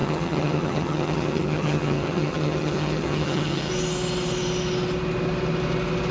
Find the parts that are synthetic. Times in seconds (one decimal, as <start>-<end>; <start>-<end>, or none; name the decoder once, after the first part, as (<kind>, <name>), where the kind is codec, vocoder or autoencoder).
0.0-3.7 (vocoder, HiFi-GAN)